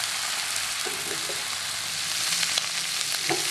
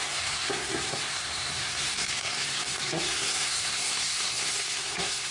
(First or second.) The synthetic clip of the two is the second